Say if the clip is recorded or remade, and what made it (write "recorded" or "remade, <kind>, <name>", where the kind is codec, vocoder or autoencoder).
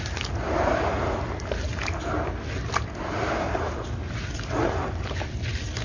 recorded